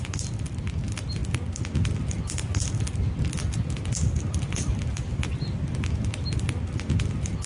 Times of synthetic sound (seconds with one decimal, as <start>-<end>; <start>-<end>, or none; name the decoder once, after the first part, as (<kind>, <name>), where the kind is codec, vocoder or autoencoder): none